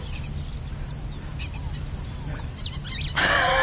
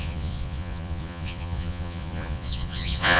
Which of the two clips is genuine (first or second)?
first